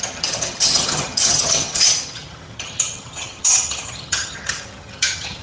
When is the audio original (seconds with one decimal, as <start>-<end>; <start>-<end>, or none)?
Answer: none

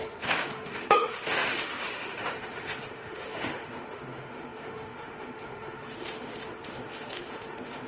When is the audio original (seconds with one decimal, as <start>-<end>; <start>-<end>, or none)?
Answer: none

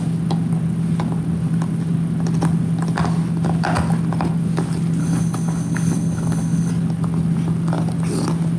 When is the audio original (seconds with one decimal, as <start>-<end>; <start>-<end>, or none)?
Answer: 0.0-5.0; 6.7-8.6